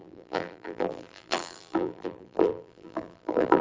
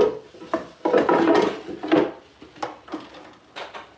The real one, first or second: second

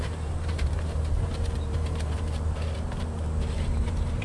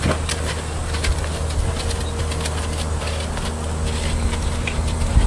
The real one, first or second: second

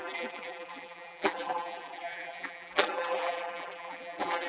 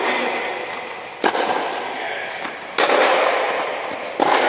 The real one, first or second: second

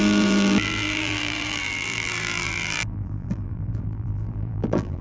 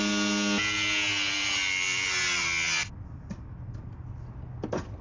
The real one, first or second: second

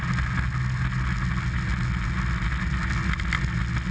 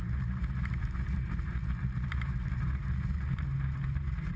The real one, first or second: first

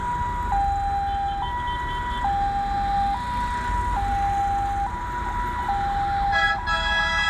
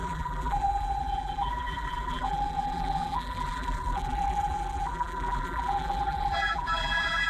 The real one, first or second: first